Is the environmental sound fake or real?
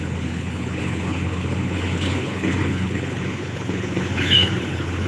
fake